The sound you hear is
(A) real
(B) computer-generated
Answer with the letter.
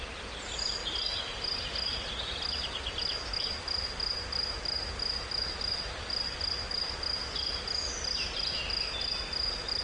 A